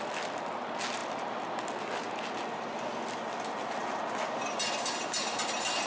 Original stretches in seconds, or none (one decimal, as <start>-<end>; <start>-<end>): 0.0-5.9